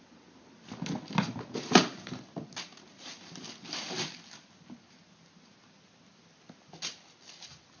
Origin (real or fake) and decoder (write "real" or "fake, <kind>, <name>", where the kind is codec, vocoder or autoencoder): real